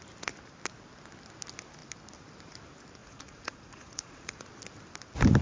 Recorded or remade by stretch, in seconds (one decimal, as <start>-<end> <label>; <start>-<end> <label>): 0.0-3.0 recorded; 3.0-4.5 remade; 4.5-5.4 recorded